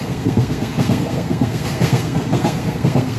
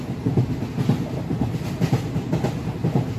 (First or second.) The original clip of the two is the second